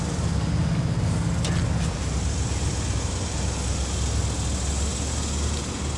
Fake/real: real